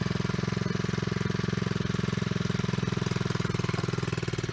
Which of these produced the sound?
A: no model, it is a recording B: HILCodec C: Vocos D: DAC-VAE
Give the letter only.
A